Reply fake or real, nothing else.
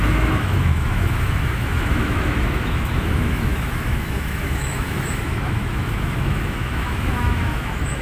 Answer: fake